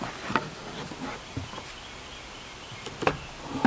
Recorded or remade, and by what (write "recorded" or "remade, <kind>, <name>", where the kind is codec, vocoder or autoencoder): recorded